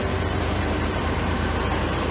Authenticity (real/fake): fake